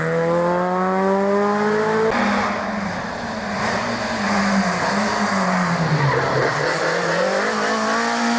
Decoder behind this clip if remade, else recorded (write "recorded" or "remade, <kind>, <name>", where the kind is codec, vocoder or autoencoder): recorded